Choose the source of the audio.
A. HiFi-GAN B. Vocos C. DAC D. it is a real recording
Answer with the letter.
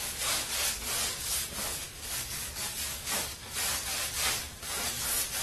C